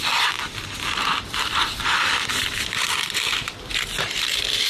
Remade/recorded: remade